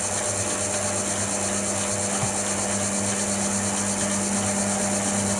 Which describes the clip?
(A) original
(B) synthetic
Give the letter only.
A